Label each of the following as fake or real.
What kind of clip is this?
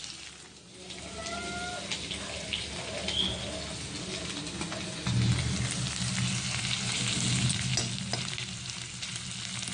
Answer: real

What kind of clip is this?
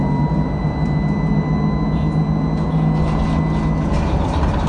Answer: real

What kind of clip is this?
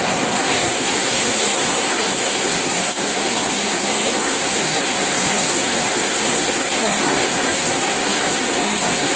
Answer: fake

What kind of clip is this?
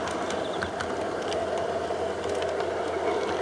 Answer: real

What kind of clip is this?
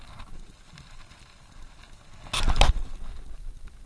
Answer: real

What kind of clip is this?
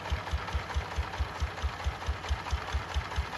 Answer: real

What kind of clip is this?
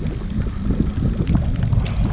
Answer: real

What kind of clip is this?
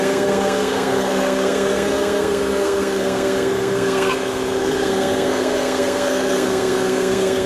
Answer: fake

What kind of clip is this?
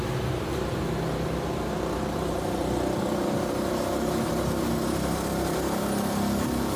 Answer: real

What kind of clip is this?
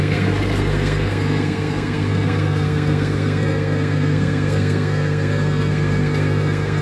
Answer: fake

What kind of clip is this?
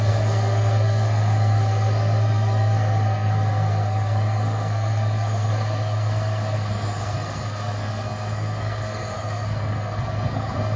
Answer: fake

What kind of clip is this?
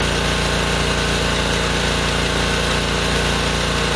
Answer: real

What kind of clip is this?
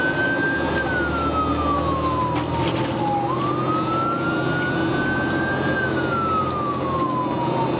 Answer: real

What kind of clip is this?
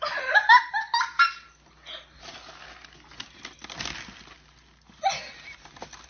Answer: real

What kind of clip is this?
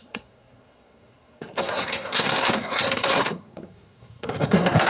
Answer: fake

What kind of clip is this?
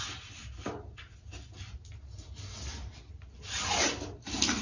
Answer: real